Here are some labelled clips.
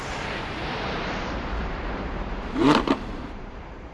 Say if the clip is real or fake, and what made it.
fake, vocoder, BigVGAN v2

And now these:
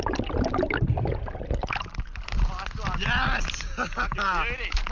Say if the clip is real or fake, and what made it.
real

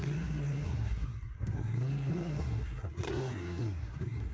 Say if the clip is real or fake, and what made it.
fake, codec, SNAC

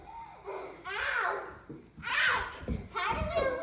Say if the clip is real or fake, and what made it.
real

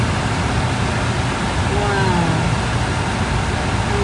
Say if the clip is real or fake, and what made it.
real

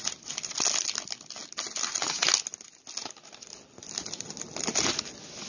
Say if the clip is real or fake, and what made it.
real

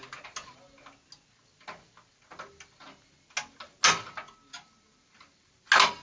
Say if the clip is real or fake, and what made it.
real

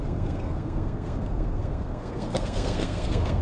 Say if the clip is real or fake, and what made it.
fake, codec, SNAC